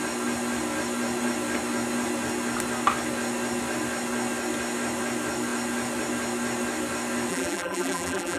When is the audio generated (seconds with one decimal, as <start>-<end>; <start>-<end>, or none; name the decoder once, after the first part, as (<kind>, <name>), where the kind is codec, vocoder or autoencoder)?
7.3-8.4 (vocoder, BigVGAN v2)

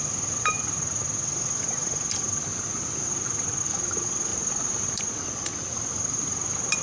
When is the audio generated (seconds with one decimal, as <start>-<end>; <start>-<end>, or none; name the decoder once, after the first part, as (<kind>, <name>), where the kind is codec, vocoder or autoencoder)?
4.3-5.0 (vocoder, BigVGAN v2)

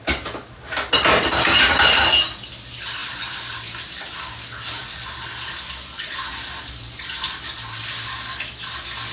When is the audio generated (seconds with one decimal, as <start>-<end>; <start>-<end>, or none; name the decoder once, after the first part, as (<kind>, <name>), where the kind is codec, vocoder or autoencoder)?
none

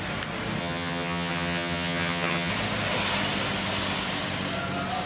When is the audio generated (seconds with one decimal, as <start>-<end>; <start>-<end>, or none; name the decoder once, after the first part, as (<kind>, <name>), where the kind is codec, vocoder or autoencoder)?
0.6-2.5 (vocoder, HiFi-GAN)